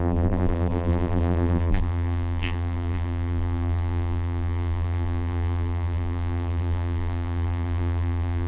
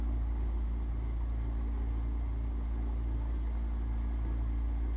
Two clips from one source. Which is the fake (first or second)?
first